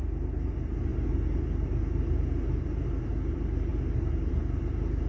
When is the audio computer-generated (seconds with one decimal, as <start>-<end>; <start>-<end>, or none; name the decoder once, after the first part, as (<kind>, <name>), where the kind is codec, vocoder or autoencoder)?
none